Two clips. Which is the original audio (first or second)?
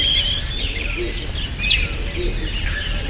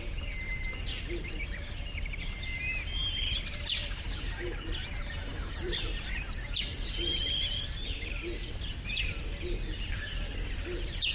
first